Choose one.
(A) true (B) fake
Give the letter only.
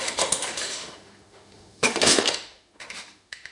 B